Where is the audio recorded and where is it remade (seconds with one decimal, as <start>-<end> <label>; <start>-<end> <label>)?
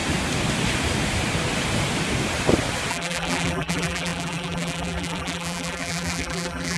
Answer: 0.0-2.9 recorded; 2.9-6.8 remade